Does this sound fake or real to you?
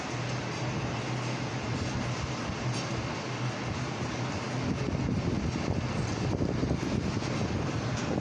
real